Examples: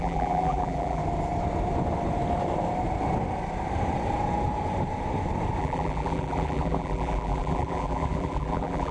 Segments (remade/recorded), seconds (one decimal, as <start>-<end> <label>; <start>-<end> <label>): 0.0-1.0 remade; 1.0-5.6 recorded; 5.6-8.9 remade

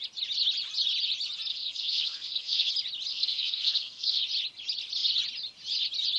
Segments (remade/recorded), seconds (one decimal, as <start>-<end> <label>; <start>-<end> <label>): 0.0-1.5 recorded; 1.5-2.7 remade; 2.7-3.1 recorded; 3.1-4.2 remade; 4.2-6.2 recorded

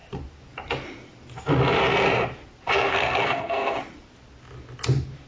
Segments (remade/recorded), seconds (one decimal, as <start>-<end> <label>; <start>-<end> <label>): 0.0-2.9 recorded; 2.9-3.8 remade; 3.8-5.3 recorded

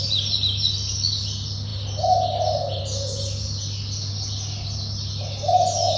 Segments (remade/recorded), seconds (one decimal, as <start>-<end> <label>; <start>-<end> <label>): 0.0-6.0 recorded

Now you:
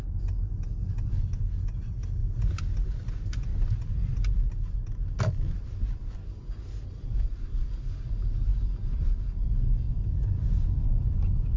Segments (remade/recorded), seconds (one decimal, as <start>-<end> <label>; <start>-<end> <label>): 0.0-11.6 recorded

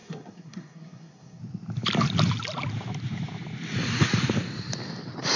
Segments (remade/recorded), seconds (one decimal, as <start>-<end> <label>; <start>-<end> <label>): 0.0-1.4 remade; 1.4-5.4 recorded